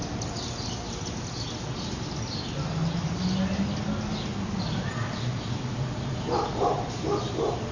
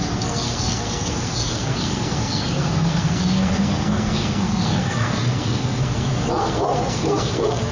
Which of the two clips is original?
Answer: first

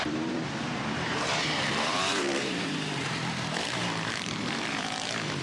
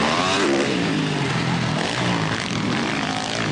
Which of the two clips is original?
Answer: second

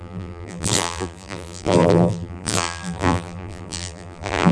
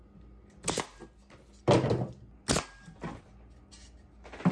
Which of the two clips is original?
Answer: second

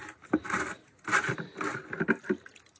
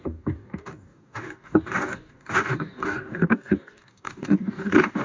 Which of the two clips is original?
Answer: first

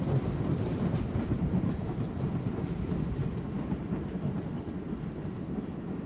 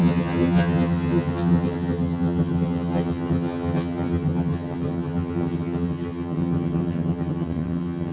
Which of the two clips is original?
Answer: first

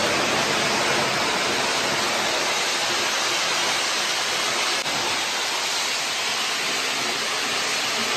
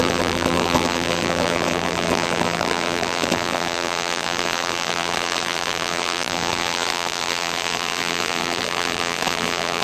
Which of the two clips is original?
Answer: first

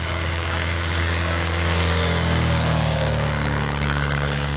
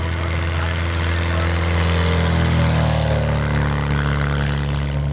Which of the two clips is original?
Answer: second